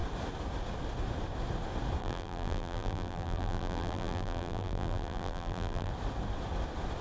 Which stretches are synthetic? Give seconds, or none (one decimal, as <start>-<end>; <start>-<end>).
2.0-5.9